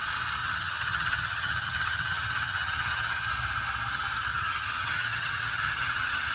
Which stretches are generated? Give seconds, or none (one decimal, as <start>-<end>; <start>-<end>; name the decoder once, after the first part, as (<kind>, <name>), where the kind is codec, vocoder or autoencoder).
0.4-3.3 (vocoder, HiFi-GAN); 4.3-6.3